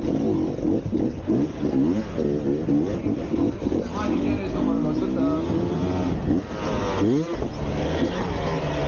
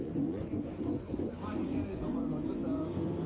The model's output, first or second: second